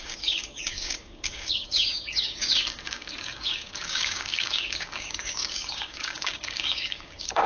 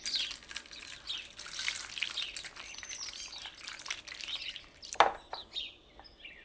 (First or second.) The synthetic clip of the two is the first